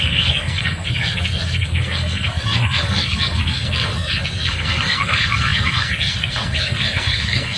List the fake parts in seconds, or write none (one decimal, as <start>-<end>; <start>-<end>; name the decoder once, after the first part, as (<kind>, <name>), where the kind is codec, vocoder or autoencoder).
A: 0.0-7.6 (codec, SNAC)